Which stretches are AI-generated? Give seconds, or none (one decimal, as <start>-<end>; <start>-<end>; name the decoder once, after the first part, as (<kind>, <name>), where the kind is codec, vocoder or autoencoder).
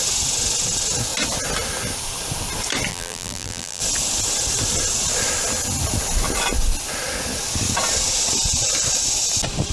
2.9-3.8 (vocoder, BigVGAN v2)